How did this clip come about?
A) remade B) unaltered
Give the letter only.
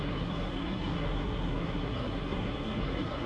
A